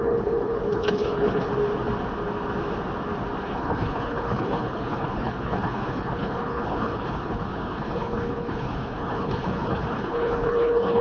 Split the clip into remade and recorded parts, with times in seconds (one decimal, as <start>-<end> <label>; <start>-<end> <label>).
0.0-1.5 remade; 1.5-3.4 recorded; 3.4-11.0 remade